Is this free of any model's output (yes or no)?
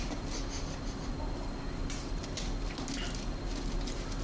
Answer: yes